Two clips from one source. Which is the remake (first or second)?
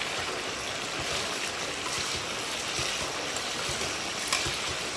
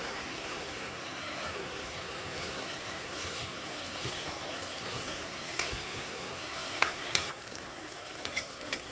second